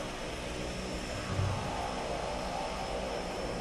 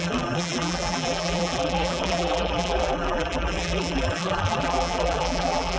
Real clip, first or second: first